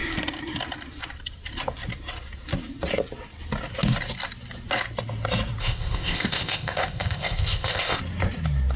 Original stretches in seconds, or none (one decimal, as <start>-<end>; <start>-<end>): 0.0-5.6; 8.0-8.8